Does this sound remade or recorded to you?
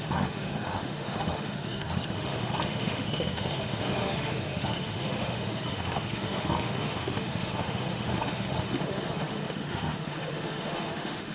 remade